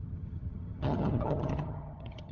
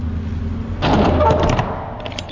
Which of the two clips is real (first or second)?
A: second